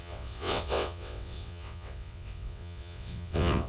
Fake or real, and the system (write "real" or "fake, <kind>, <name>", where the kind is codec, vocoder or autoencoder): fake, vocoder, WaveNeXt